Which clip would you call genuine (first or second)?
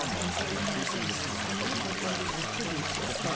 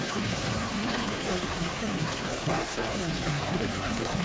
first